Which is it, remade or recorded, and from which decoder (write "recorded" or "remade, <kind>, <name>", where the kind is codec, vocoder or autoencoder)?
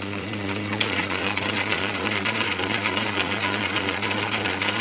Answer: remade, vocoder, Vocos